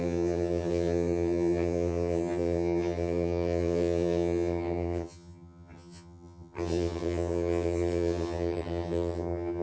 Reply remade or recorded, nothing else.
remade